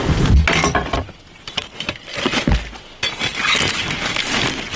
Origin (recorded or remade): recorded